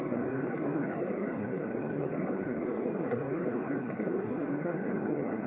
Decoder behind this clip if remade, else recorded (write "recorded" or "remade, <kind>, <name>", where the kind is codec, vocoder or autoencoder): remade, codec, SNAC